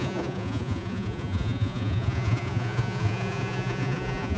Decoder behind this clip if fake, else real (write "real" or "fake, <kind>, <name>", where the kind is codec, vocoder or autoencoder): fake, vocoder, Vocos